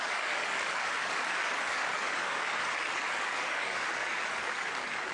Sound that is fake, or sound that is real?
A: fake